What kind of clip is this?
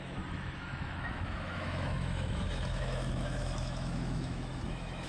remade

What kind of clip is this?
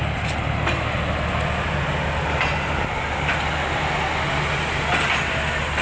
recorded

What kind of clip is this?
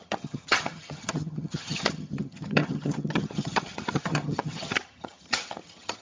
remade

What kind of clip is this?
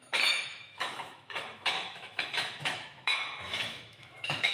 remade